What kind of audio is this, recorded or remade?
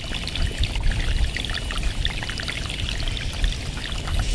recorded